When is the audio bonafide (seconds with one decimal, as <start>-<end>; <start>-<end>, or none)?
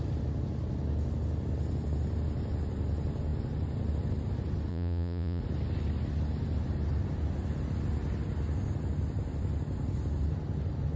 0.0-4.7; 5.4-11.0